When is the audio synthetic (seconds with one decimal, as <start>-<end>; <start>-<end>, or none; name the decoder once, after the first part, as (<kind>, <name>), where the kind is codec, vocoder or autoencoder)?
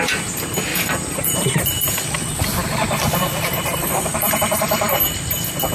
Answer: 0.7-2.0 (vocoder, BigVGAN v2); 4.1-5.0